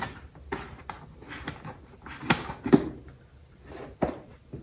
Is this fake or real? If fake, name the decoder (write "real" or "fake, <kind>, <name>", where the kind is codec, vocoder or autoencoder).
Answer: real